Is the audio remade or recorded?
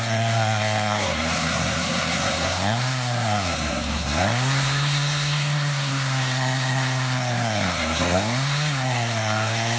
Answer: remade